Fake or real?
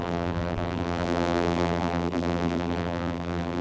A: fake